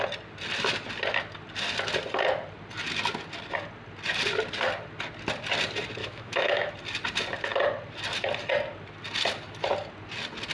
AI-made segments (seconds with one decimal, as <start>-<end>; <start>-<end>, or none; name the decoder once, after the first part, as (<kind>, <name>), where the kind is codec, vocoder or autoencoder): 6.0-6.7 (autoencoder, DAC-VAE)